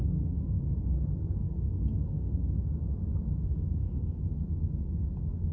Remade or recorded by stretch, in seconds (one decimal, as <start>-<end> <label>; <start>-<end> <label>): 0.0-0.6 remade; 0.6-1.4 recorded; 1.4-2.6 remade; 2.6-3.4 recorded; 3.4-4.2 remade; 4.2-5.5 recorded